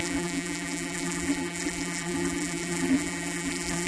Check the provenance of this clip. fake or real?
fake